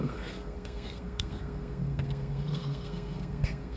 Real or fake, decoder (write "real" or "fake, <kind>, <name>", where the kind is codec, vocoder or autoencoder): fake, codec, SNAC